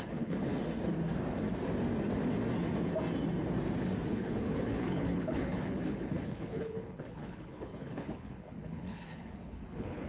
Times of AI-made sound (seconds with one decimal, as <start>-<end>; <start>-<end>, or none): 0.0-0.5; 4.1-10.1